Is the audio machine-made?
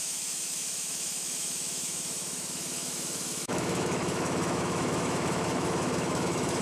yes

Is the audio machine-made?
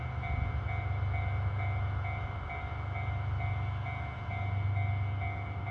yes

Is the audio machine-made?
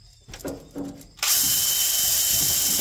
no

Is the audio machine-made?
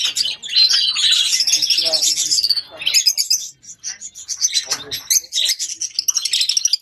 no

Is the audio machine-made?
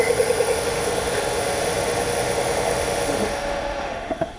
yes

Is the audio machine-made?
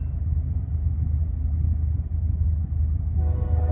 no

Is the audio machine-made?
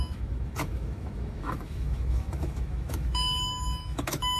yes